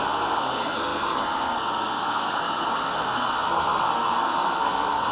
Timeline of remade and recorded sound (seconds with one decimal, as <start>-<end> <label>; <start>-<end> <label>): 0.0-5.1 remade

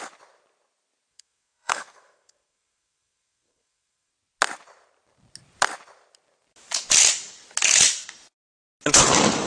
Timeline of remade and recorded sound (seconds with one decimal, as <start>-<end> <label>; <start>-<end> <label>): 0.0-1.1 recorded; 1.1-4.1 remade; 4.1-9.5 recorded

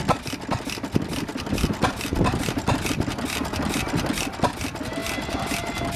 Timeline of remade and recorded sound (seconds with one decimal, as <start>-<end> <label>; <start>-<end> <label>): 0.0-6.0 recorded

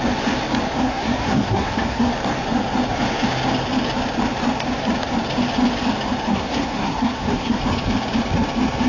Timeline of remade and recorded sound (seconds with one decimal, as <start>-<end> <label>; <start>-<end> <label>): 0.0-0.8 recorded; 0.8-2.1 remade; 2.1-6.3 recorded; 6.3-7.6 remade; 7.6-8.9 recorded

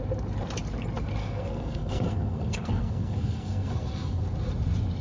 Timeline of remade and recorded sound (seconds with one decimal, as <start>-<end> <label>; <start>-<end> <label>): 0.0-1.2 recorded; 1.2-4.2 remade; 4.2-5.0 recorded

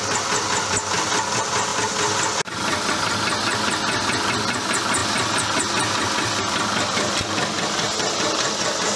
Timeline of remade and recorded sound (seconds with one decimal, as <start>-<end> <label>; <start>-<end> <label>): 0.0-9.0 recorded

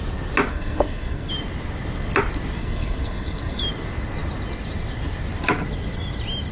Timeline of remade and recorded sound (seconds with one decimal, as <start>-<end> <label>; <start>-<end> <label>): 0.0-0.5 recorded; 0.5-1.3 remade; 1.3-2.6 recorded; 2.6-3.6 remade; 3.6-6.5 recorded

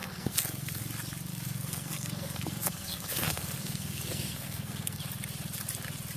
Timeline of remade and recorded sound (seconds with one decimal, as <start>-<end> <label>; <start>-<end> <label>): 0.0-0.8 remade; 0.8-1.3 recorded; 1.3-5.0 remade; 5.0-6.2 recorded